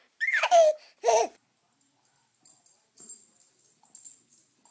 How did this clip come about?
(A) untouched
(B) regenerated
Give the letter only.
A